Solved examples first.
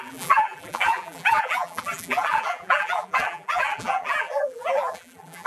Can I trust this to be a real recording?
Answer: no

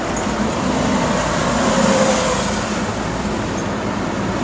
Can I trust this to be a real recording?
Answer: no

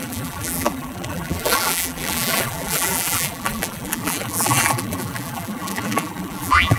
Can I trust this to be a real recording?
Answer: no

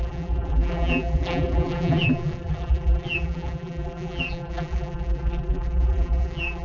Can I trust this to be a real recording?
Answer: no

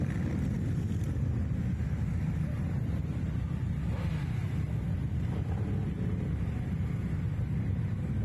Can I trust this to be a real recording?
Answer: yes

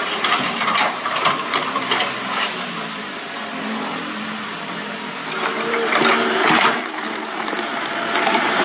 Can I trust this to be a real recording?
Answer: no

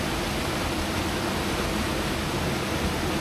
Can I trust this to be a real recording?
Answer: yes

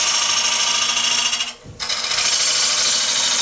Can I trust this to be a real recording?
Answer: yes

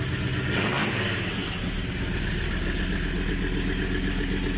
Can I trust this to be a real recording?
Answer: yes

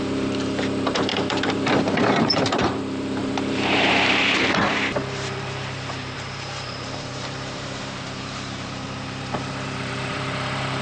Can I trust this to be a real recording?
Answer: no